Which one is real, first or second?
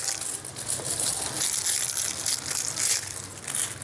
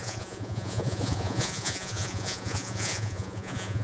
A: first